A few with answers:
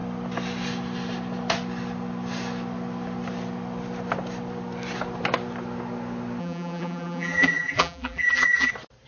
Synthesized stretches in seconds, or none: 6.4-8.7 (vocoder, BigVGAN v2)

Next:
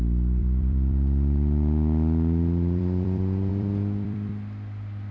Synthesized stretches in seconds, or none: 0.0-4.3 (vocoder, BigVGAN v2)